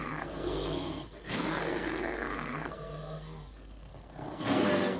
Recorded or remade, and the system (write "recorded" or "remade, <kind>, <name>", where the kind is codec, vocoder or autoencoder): remade, codec, SNAC